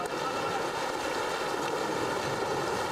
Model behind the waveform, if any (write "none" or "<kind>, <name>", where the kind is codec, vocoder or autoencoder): none